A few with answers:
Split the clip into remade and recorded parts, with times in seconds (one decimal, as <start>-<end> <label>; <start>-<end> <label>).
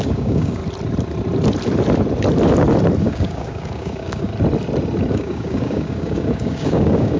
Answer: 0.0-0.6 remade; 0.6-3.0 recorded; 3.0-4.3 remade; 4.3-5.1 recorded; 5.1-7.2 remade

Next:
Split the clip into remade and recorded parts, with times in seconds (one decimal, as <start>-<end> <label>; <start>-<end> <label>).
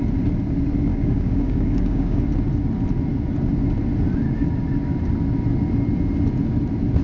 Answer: 0.0-0.9 recorded; 0.9-2.2 remade; 2.2-7.0 recorded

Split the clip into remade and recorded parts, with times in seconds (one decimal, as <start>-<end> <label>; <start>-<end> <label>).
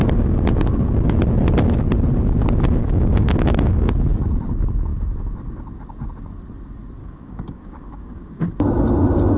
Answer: 0.0-2.8 recorded; 2.8-3.9 remade; 3.9-7.0 recorded; 7.0-8.5 remade; 8.5-9.4 recorded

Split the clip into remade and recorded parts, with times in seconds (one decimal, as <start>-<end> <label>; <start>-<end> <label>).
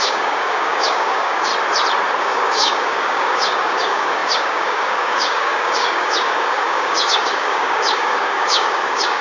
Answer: 0.0-1.5 remade; 1.5-2.2 recorded; 2.2-9.2 remade